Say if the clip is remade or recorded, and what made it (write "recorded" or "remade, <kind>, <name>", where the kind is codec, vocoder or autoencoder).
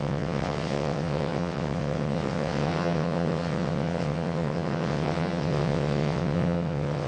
remade, vocoder, WaveNeXt